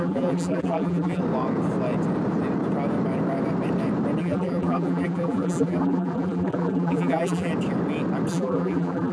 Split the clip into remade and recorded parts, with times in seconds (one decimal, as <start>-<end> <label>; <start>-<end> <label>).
0.0-1.2 remade; 1.2-4.2 recorded; 4.2-7.5 remade; 7.5-8.3 recorded; 8.3-9.1 remade